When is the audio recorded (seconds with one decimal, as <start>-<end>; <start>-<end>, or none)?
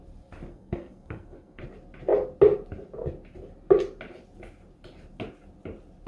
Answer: 0.0-0.5; 1.6-6.1